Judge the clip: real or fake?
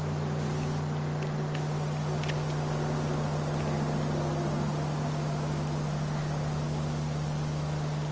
real